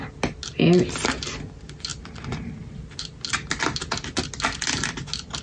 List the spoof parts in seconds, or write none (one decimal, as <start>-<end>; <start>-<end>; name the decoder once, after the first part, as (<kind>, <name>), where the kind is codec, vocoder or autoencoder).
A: none